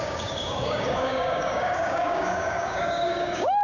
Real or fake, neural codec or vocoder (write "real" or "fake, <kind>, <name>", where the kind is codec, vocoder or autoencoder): fake, codec, DAC